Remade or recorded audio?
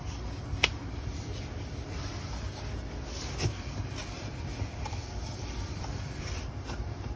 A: remade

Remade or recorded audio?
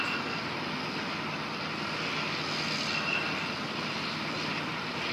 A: recorded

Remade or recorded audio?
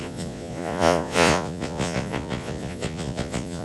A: remade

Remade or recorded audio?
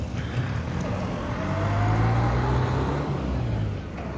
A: recorded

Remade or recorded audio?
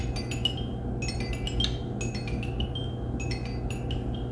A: recorded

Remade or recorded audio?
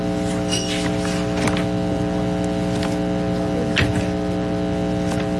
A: recorded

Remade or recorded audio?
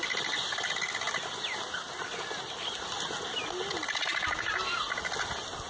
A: recorded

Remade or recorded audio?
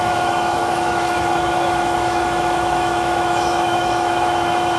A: remade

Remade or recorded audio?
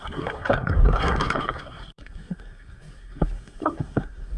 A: remade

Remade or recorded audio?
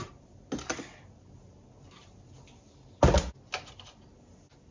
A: recorded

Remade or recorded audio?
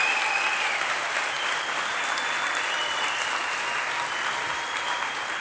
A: recorded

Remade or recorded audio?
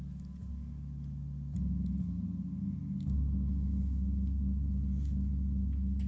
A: recorded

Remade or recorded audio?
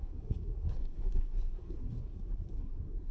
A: remade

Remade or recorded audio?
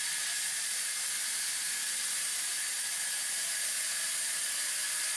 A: recorded